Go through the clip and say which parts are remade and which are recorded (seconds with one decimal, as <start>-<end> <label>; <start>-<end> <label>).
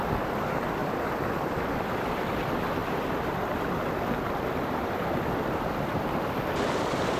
0.0-0.8 recorded; 0.8-2.1 remade; 2.1-2.8 recorded; 2.8-7.2 remade